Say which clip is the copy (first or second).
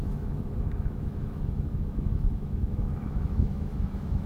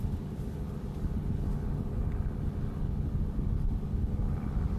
first